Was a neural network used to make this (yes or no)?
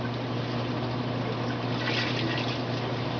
no